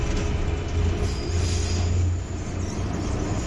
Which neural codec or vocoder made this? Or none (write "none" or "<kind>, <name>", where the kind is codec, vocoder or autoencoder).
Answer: none